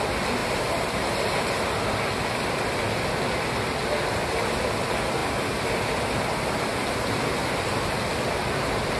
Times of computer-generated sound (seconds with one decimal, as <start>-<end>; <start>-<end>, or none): 0.4-1.5